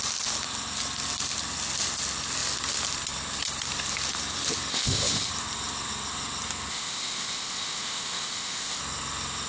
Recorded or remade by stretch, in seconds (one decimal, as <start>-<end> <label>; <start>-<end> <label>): 0.0-4.7 recorded; 4.7-5.3 remade; 5.3-6.7 recorded; 6.7-8.8 remade; 8.8-9.5 recorded